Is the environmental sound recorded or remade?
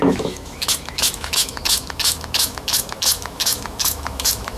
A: remade